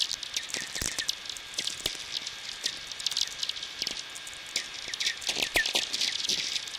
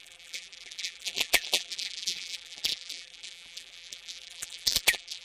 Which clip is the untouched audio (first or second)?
first